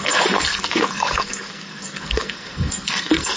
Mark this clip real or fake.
fake